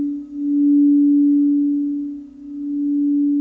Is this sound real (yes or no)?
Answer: yes